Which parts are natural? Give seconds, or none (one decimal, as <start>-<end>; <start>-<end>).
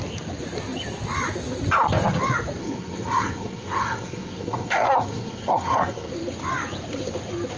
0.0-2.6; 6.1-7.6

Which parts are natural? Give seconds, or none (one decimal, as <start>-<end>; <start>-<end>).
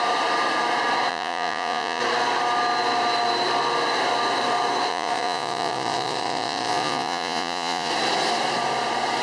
0.0-1.1; 2.0-4.9; 7.9-9.2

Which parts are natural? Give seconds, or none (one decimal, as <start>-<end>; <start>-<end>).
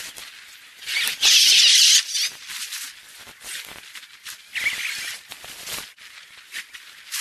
0.0-7.2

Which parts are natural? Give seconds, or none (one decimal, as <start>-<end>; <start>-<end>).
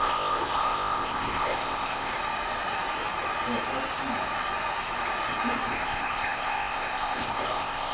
2.1-5.7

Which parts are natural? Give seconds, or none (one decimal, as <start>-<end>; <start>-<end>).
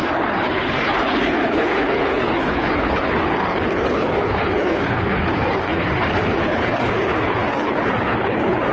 none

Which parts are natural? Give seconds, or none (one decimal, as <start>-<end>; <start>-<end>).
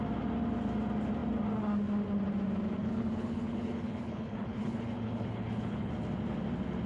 0.0-2.8; 5.9-6.9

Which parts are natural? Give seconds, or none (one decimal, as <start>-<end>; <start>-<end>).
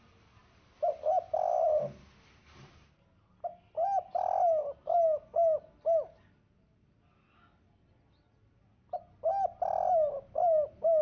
0.0-11.0